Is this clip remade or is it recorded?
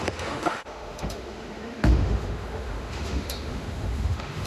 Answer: remade